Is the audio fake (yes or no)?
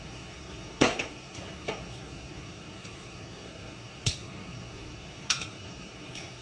yes